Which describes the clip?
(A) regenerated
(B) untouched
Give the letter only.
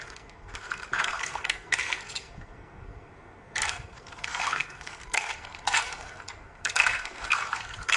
A